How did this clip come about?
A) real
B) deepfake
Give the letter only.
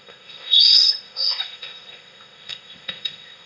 B